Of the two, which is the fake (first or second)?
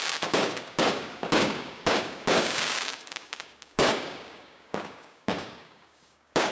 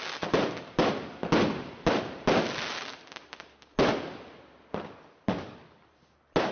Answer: first